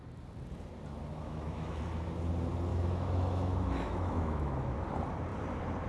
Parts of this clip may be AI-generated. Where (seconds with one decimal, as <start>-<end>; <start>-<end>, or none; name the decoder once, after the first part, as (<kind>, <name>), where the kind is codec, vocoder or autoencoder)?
1.1-1.8 (autoencoder, DAC-VAE); 2.7-4.8